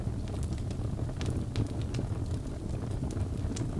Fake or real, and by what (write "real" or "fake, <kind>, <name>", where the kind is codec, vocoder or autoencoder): real